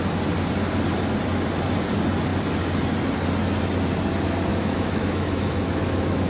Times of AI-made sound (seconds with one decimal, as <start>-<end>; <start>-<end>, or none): 4.5-6.3